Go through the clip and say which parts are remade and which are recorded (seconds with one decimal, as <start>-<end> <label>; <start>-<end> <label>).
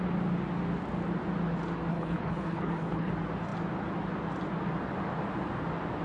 0.0-1.9 recorded; 1.9-3.1 remade; 3.1-6.0 recorded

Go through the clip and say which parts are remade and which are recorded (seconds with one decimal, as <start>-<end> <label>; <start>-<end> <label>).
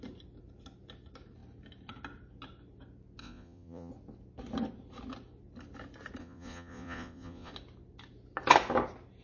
0.0-3.2 recorded; 3.2-3.9 remade; 3.9-6.2 recorded; 6.2-7.5 remade; 7.5-9.2 recorded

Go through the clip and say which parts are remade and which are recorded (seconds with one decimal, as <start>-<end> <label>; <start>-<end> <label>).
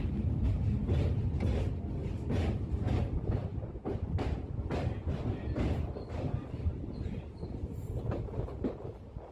0.0-2.0 recorded; 2.0-3.0 remade; 3.0-3.4 recorded; 3.4-4.2 remade; 4.2-9.3 recorded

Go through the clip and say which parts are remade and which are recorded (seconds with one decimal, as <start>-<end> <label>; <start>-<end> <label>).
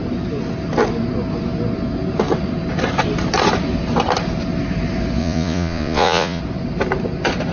0.0-5.2 recorded; 5.2-6.4 remade; 6.4-7.5 recorded